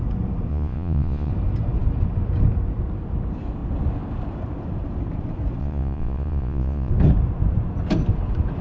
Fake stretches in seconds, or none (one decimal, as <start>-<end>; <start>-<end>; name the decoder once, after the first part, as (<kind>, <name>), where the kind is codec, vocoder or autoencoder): 0.5-1.3 (vocoder, Vocos); 5.6-6.9